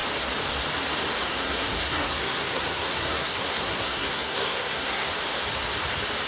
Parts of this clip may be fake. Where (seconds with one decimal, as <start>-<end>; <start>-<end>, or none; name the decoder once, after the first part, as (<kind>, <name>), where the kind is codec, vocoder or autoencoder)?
1.3-5.1 (codec, SNAC)